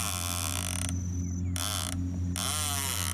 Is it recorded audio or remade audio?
recorded